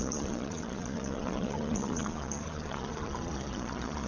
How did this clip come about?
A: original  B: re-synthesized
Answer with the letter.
B